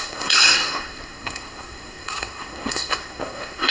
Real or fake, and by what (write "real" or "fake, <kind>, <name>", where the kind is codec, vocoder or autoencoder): fake, codec, SNAC